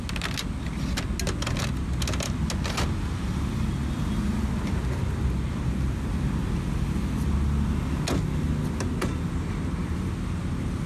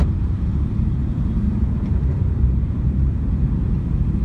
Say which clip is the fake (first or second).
second